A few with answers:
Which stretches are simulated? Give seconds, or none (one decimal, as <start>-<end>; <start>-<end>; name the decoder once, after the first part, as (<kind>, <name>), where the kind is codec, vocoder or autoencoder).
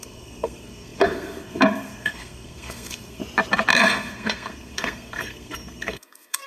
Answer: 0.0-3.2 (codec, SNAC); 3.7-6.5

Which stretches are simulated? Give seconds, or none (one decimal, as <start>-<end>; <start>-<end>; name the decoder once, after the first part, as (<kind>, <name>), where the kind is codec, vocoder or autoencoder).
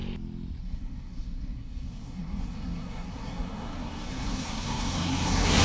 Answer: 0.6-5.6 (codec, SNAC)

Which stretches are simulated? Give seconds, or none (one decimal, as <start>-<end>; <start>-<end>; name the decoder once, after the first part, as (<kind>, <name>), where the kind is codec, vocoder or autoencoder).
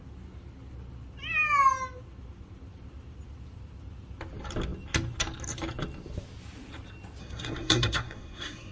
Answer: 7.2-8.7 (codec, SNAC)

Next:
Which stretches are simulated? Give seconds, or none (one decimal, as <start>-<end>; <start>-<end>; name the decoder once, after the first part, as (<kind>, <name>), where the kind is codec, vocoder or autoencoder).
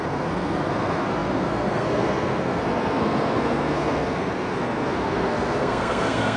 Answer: 0.0-6.4 (codec, SNAC)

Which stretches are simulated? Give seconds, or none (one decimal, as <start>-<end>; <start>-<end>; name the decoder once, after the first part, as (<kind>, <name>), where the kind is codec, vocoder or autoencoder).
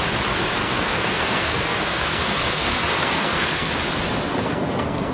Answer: 0.6-3.7 (codec, SNAC); 4.3-5.1